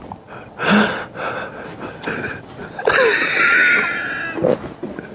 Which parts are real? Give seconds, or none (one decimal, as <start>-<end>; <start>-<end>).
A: 0.0-5.1